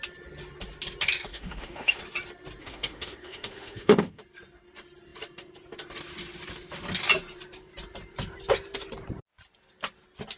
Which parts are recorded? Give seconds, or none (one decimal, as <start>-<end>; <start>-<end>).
0.0-1.3; 2.0-2.6; 4.2-10.4